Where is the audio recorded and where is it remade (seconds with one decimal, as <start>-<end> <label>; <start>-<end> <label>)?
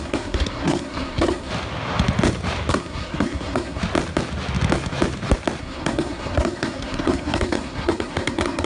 0.0-1.5 remade; 1.5-2.7 recorded; 2.7-3.8 remade; 3.8-5.6 recorded; 5.6-8.7 remade